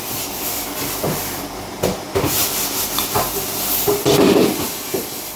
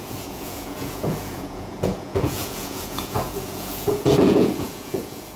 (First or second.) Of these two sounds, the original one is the first